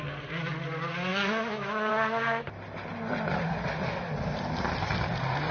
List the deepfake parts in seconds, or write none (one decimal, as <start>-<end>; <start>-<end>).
1.1-1.9